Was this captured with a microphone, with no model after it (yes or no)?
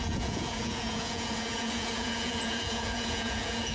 no